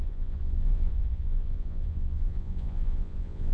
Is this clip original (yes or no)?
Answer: no